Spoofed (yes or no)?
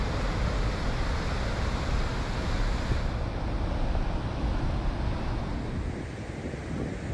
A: no